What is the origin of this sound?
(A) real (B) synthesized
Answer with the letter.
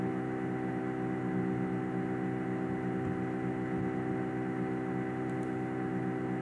A